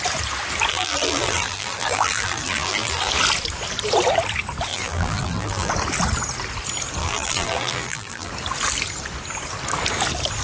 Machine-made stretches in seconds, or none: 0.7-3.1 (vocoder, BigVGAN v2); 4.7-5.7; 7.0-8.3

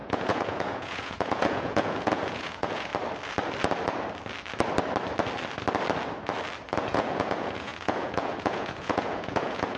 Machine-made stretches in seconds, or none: 0.0-2.9 (vocoder, Vocos); 6.8-9.8